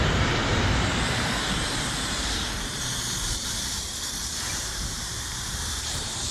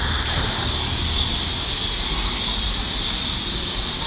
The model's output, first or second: first